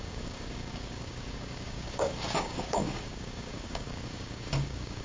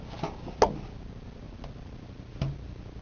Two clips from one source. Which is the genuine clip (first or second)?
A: second